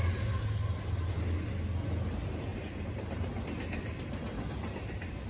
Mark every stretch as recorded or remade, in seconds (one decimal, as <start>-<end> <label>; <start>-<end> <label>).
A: 0.0-2.5 recorded; 2.5-3.4 remade; 3.4-5.3 recorded